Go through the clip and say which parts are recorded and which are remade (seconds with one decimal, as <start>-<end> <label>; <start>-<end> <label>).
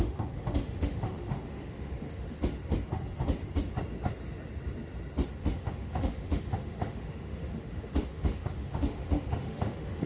0.0-2.4 remade; 2.4-5.4 recorded; 5.4-10.1 remade